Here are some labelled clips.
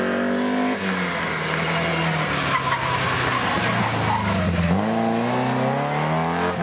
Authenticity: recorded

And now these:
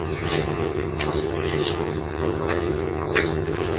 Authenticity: remade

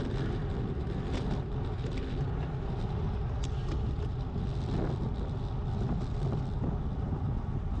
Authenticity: recorded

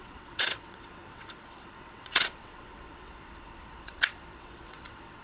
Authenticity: remade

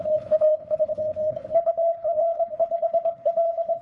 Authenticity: remade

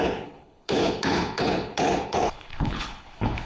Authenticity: remade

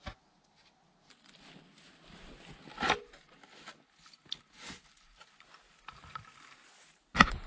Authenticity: recorded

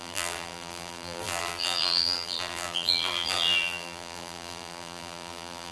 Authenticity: remade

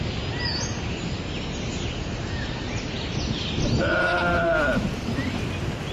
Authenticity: recorded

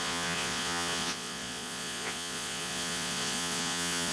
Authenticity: remade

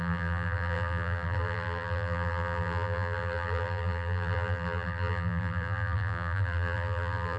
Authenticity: remade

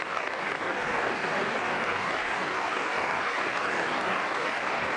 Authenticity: remade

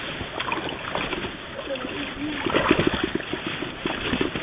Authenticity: recorded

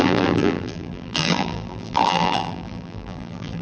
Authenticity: remade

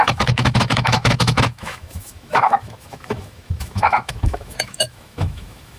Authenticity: remade